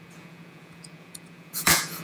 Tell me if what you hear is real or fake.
fake